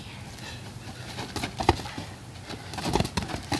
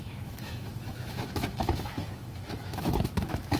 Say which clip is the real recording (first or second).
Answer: first